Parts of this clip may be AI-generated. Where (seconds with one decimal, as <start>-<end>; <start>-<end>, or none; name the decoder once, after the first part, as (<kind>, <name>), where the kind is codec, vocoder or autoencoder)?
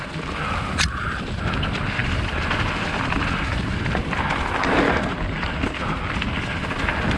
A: 2.0-2.7 (vocoder, BigVGAN v2)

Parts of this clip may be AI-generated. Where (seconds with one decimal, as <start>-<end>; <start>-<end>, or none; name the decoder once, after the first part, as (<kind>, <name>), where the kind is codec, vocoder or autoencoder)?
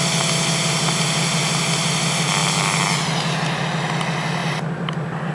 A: 4.4-5.3 (vocoder, BigVGAN v2)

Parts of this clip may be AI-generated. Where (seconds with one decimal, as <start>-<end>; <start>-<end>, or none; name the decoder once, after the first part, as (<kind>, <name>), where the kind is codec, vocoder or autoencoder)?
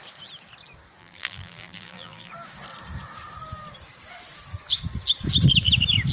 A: 1.0-2.3 (vocoder, BigVGAN v2)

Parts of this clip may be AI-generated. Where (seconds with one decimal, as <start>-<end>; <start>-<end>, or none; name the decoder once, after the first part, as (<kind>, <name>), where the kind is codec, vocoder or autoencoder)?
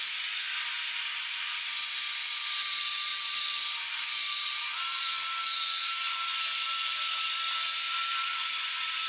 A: 0.0-9.1 (vocoder, BigVGAN v2)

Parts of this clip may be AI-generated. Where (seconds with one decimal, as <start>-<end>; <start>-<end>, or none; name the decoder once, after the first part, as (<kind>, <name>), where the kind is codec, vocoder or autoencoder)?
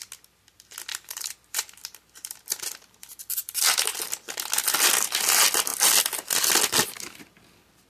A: 0.9-4.4 (vocoder, BigVGAN v2)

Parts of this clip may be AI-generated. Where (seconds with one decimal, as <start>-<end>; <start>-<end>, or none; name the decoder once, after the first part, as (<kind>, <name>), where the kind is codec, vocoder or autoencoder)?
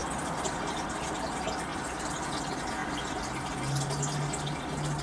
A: none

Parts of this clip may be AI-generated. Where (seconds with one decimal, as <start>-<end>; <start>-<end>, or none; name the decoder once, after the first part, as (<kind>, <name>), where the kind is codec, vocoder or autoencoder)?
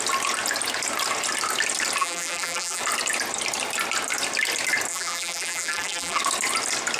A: 2.0-2.8 (vocoder, BigVGAN v2); 4.9-6.2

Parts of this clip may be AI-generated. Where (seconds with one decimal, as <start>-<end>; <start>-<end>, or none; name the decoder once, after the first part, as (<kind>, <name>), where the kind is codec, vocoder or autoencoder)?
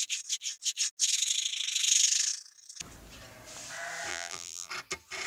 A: 4.1-4.7 (vocoder, BigVGAN v2)